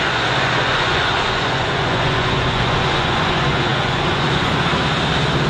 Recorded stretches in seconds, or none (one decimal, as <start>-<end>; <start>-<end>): 4.7-5.5

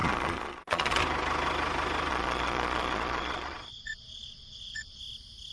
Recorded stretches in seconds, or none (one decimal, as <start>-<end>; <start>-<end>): 1.0-2.1; 5.0-5.5

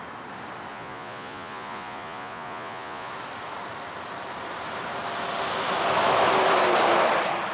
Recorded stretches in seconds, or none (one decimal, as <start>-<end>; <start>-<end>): 0.0-0.7; 3.1-7.5

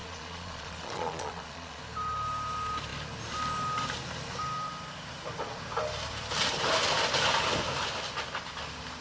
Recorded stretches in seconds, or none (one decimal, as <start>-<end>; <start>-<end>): 1.8-9.0

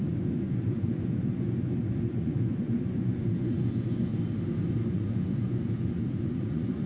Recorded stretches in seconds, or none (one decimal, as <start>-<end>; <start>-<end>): 4.1-4.9

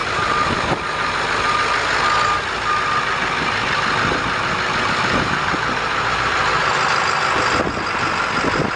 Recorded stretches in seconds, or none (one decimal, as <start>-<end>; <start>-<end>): 0.0-8.8

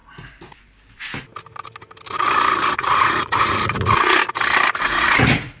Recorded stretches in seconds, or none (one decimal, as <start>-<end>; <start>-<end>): 0.0-2.7; 4.2-4.8

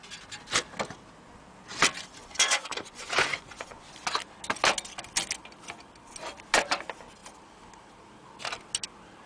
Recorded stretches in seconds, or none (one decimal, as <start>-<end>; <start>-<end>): 0.0-2.2; 3.9-9.3